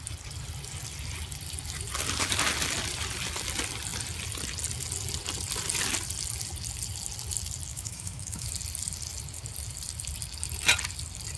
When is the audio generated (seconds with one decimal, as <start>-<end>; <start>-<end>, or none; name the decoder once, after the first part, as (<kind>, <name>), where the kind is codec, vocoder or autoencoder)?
7.7-8.5 (autoencoder, DAC-VAE)